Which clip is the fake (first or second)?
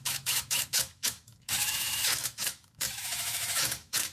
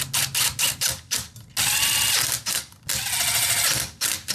first